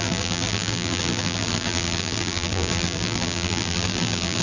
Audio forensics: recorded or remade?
remade